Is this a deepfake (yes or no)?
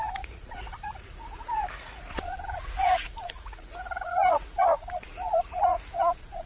yes